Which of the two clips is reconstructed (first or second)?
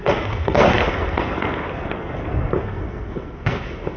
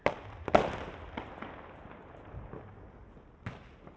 first